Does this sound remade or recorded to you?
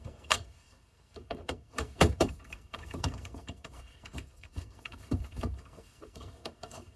remade